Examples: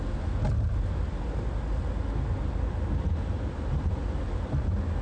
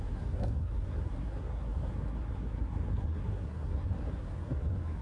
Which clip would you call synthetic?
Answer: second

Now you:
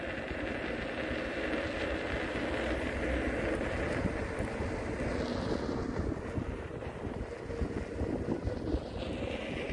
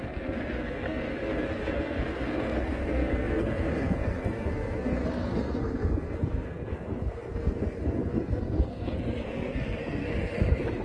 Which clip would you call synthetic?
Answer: second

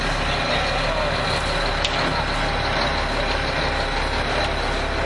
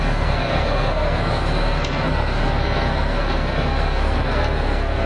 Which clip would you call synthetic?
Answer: second